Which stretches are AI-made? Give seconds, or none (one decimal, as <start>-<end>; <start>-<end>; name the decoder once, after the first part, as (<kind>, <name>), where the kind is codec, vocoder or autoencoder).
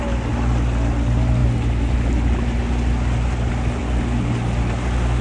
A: none